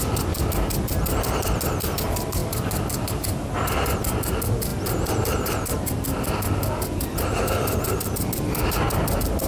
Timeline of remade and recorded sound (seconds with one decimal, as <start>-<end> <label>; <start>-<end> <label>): 0.0-9.5 recorded